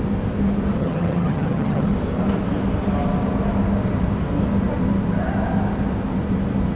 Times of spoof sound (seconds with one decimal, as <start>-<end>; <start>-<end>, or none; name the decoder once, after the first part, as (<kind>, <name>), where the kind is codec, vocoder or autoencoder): 0.8-1.9 (vocoder, HiFi-GAN)